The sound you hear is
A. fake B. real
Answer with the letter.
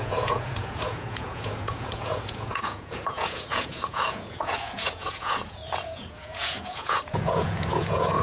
A